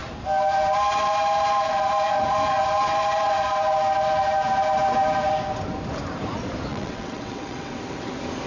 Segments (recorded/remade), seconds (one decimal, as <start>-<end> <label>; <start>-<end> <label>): 0.0-6.7 recorded; 6.7-7.8 remade; 7.8-8.5 recorded